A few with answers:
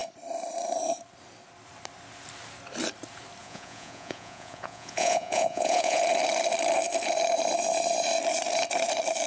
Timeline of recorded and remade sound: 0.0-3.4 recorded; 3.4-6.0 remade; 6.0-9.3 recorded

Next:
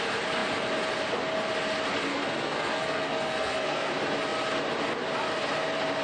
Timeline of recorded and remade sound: 0.0-2.1 recorded; 2.1-3.9 remade; 3.9-6.0 recorded

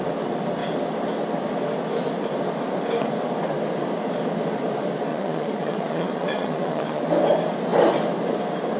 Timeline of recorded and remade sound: 0.0-5.1 recorded; 5.1-7.0 remade; 7.0-8.8 recorded

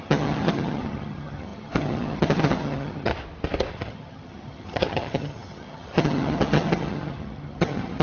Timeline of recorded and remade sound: 0.0-3.1 remade; 3.1-3.7 recorded; 3.7-8.0 remade

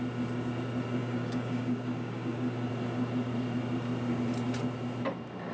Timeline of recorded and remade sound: 0.0-1.0 recorded; 1.0-2.7 remade; 2.7-5.5 recorded